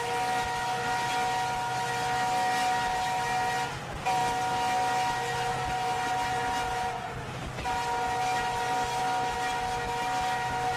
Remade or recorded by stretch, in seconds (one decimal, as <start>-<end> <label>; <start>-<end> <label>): 0.0-10.8 recorded